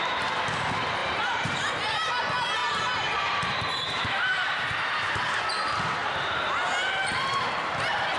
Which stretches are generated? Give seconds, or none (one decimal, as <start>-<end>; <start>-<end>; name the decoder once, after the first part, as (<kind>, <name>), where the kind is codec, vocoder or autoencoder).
1.0-1.7 (vocoder, BigVGAN v2); 2.6-5.4; 6.0-6.5

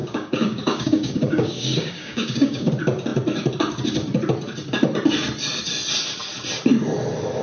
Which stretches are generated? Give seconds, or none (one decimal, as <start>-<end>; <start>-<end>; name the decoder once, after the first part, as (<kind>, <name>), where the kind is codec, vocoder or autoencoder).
0.0-2.7 (codec, DAC)

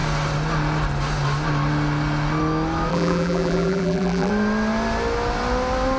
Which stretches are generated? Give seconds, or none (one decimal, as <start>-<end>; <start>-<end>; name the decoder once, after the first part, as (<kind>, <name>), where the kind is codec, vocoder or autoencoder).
2.9-4.3 (vocoder, BigVGAN v2)

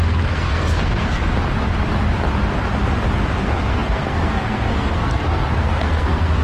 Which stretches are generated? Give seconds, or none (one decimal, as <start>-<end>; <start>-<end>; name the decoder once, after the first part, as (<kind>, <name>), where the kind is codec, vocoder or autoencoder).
0.0-1.2 (codec, SNAC); 3.4-6.4

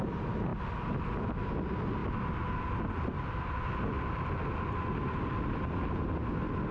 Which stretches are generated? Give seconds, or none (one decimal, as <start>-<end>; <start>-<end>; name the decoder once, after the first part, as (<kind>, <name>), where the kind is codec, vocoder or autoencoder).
none